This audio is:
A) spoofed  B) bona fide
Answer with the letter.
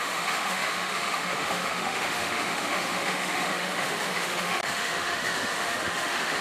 A